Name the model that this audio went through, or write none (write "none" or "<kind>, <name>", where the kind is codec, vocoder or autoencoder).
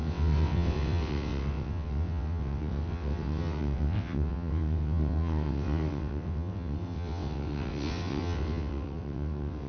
vocoder, WaveNeXt